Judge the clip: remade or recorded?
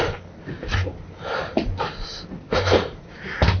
recorded